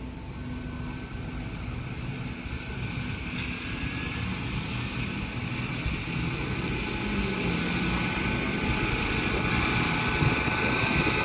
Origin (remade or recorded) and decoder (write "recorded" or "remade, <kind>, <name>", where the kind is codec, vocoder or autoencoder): recorded